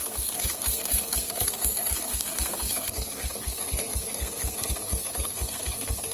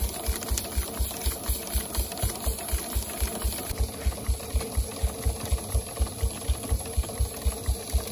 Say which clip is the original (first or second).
second